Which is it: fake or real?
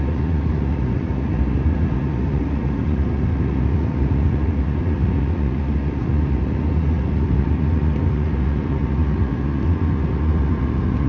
fake